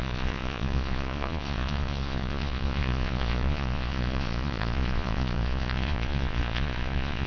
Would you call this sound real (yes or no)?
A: no